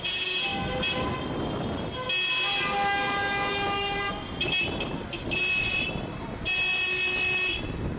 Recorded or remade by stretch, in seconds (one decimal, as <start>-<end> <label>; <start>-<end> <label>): 0.0-8.0 recorded